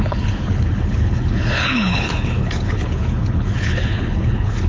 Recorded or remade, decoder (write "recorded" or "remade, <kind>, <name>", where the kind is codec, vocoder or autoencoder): remade, codec, HILCodec